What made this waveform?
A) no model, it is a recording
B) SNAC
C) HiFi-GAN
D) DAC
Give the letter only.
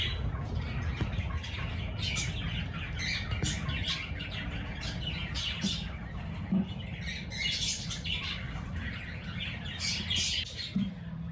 A